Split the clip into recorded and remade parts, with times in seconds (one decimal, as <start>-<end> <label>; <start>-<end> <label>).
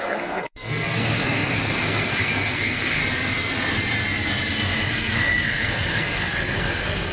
0.0-3.0 remade; 3.0-4.9 recorded; 4.9-7.1 remade